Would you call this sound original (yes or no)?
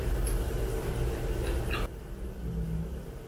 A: yes